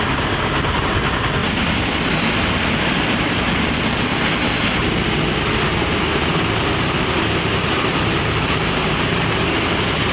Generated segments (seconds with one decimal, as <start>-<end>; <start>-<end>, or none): none